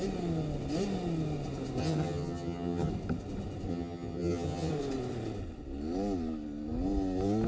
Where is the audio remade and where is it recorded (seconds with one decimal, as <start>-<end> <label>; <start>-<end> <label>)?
0.0-1.8 recorded; 1.8-2.9 remade; 2.9-3.7 recorded; 3.7-4.7 remade; 4.7-7.5 recorded